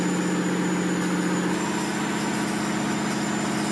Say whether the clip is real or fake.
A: real